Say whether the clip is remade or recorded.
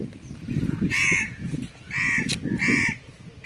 recorded